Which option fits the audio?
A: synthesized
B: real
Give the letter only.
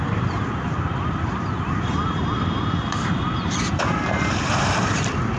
A